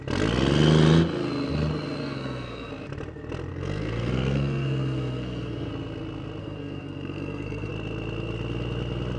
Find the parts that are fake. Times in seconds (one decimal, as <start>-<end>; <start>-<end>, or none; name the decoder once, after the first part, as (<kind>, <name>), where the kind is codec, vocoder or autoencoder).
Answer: 2.0-2.7 (codec, SNAC); 3.5-5.7; 6.4-7.7